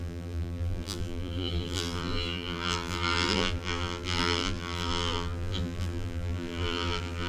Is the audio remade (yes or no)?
yes